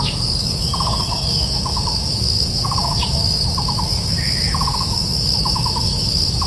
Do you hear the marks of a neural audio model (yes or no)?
yes